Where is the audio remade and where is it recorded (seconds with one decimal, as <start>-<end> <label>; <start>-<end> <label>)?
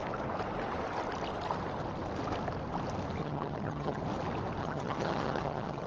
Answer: 0.0-3.2 recorded; 3.2-4.0 remade; 4.0-4.6 recorded; 4.6-5.9 remade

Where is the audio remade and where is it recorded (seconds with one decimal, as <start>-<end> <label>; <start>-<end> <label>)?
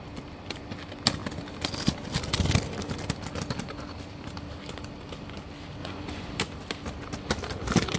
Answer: 0.0-5.8 recorded; 5.8-6.4 remade; 6.4-8.0 recorded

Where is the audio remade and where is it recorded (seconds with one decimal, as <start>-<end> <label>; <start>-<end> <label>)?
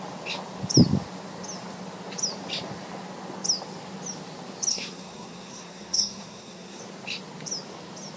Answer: 0.0-4.7 recorded; 4.7-6.8 remade; 6.8-8.2 recorded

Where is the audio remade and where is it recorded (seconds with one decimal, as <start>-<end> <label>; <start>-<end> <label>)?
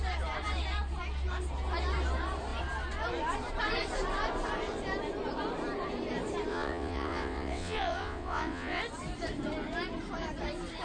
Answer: 0.0-6.5 recorded; 6.5-8.8 remade; 8.8-10.8 recorded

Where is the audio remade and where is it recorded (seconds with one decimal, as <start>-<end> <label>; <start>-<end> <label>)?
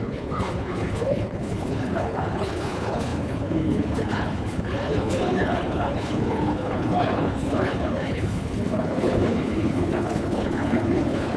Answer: 0.0-11.4 remade